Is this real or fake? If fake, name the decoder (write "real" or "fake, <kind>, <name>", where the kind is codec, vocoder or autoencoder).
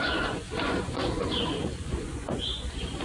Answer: fake, vocoder, Vocos